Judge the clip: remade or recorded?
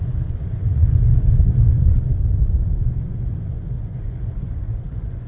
remade